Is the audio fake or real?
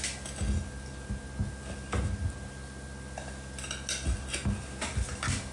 real